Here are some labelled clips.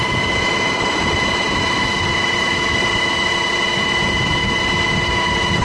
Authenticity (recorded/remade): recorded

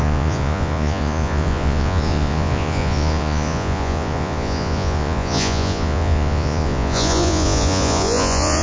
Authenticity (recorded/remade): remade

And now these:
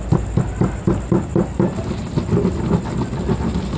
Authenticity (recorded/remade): recorded